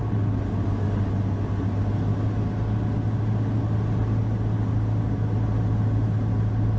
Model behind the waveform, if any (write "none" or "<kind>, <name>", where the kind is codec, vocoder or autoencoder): none